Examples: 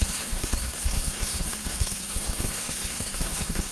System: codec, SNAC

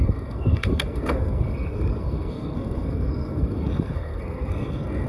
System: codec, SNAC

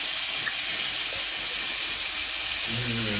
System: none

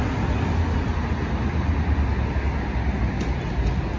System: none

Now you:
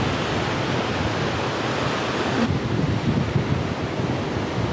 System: none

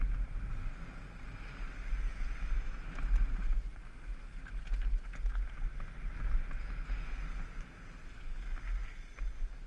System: none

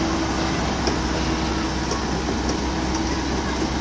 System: none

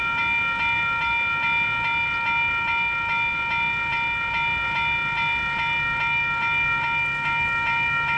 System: none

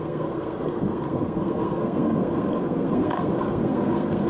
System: codec, SNAC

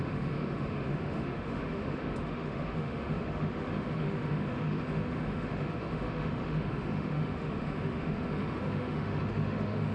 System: autoencoder, DAC-VAE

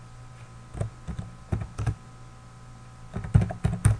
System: none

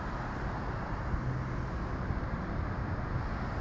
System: none